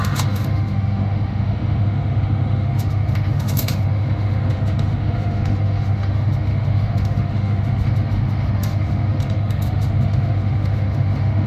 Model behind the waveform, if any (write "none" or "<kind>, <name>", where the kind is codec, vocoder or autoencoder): autoencoder, DAC-VAE